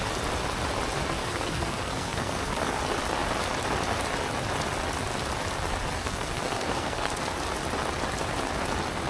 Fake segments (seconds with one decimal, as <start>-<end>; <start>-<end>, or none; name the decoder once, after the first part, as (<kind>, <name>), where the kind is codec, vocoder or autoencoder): 1.2-2.8 (codec, SNAC); 6.0-7.1